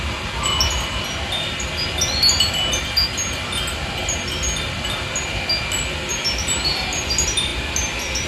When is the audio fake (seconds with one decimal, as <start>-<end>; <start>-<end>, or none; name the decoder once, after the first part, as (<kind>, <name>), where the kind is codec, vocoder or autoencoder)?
none